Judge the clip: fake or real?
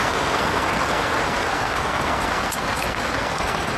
fake